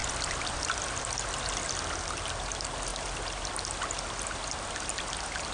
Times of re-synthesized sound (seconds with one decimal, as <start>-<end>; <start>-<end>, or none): none

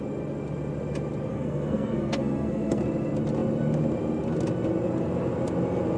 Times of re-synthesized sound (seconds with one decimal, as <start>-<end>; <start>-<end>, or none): 1.3-2.8

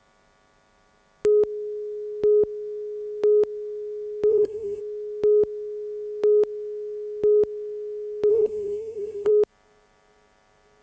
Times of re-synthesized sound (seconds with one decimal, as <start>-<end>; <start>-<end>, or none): 4.3-4.8; 8.3-9.3

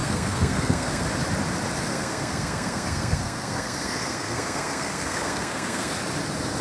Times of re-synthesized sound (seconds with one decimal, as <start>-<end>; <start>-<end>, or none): 0.0-1.0; 1.9-5.9

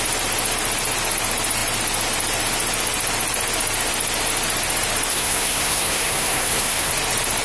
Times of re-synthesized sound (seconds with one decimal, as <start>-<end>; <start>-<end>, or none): 5.1-6.9

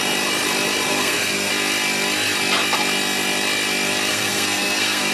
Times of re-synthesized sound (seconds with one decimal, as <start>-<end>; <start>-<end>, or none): 0.9-1.5; 4.1-5.1